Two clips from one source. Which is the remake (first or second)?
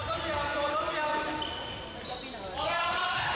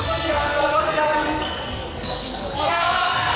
second